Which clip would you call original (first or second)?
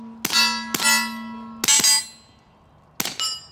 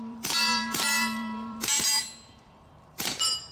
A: first